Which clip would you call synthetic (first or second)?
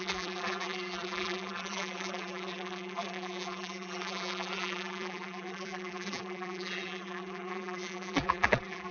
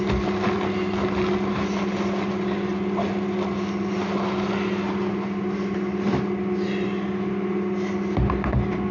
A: first